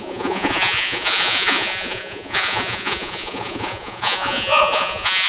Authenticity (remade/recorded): remade